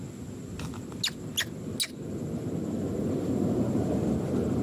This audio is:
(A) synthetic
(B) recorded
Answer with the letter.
B